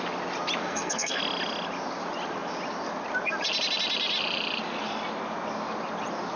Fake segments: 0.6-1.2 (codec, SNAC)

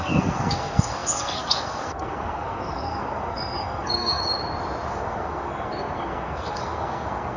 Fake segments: 0.0-4.2 (codec, SNAC); 4.9-7.4

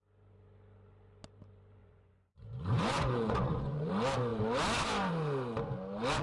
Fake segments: 1.8-3.9 (vocoder, Vocos)

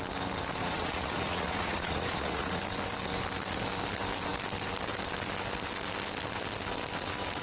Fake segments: 0.6-2.6 (vocoder, Vocos)

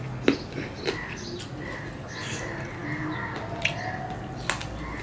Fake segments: none